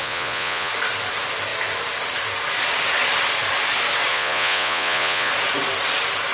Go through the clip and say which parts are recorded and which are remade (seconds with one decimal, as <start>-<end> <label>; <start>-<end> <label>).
0.0-0.7 remade; 0.7-4.1 recorded; 4.1-5.3 remade; 5.3-6.3 recorded